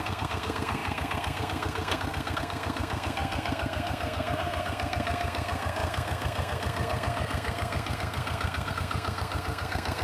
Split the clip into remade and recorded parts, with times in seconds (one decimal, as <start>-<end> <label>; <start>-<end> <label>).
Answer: 0.0-10.0 remade